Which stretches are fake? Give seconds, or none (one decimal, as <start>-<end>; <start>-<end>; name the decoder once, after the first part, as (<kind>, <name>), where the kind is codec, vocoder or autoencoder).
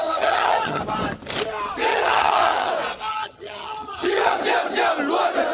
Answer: 0.0-0.8 (vocoder, HiFi-GAN); 1.9-2.7; 3.1-4.4